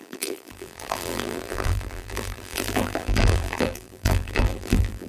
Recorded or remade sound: remade